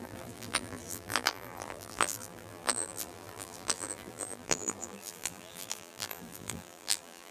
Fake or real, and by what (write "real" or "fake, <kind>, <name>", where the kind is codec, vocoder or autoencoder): fake, vocoder, BigVGAN v2